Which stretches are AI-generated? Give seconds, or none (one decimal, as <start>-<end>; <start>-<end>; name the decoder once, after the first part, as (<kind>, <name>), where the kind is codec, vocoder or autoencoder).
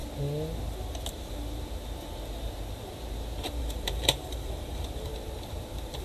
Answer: 3.6-5.1 (vocoder, BigVGAN v2)